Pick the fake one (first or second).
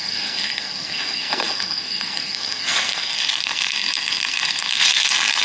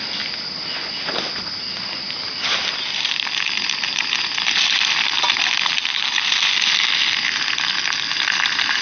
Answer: first